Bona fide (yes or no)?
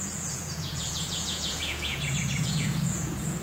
no